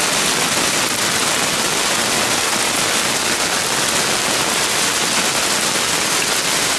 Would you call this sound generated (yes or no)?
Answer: no